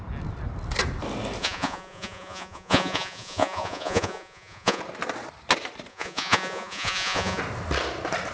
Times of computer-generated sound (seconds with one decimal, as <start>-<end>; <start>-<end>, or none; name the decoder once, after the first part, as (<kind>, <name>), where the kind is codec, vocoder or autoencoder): 1.4-4.8 (vocoder, Vocos); 5.9-7.4